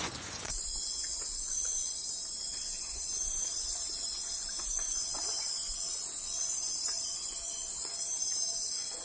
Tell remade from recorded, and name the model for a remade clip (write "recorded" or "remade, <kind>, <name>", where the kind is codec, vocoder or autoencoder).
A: remade, vocoder, Vocos